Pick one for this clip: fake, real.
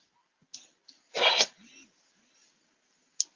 real